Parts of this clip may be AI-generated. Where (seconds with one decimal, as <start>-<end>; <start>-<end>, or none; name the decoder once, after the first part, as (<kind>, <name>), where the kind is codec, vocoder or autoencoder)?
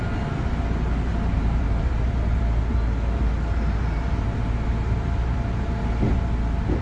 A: 1.1-2.4 (vocoder, BigVGAN v2); 3.8-5.8